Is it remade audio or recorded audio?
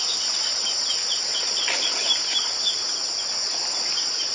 recorded